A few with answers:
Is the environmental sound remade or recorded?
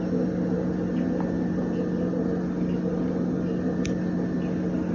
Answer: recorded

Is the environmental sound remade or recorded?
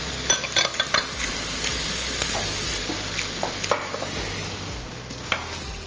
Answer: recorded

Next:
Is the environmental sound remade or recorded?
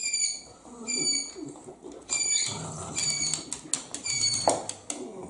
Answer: recorded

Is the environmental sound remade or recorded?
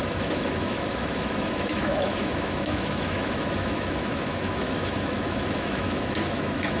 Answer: remade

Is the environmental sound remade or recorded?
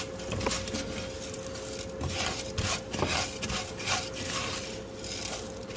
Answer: recorded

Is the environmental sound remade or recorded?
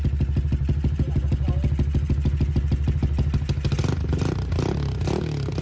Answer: recorded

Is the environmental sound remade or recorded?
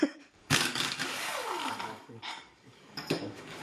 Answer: remade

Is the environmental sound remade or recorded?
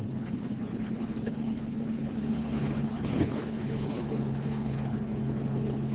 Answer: remade